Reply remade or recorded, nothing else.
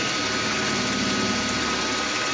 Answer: recorded